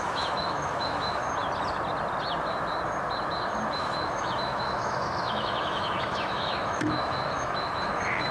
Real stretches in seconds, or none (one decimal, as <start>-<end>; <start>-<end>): 1.2-3.7